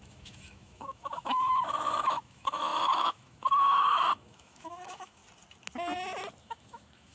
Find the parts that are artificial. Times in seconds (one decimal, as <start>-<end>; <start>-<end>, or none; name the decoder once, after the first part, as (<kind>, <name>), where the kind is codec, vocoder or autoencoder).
0.0-5.2 (autoencoder, DAC-VAE); 6.4-7.1